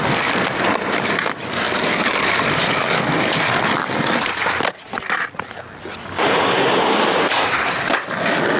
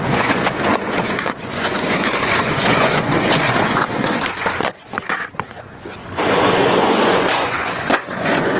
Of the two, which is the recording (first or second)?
first